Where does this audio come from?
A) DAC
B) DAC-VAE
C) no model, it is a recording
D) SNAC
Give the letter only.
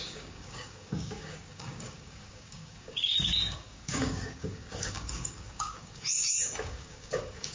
A